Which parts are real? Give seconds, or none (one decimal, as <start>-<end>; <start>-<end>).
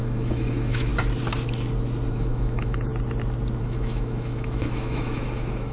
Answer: 0.9-2.1; 2.9-3.6